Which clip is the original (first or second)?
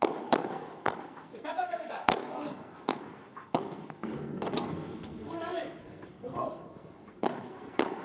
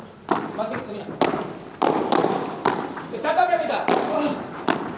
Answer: second